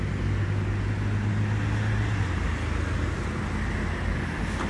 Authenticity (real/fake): real